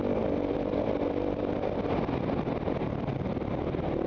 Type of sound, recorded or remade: recorded